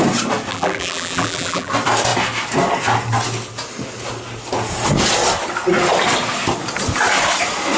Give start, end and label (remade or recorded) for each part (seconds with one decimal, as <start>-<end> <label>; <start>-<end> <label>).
0.0-0.5 recorded; 0.5-1.7 remade; 1.7-7.8 recorded